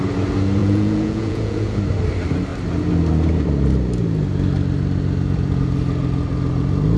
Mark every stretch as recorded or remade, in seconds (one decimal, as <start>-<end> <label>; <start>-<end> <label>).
0.0-0.6 recorded; 0.6-1.8 remade; 1.8-7.0 recorded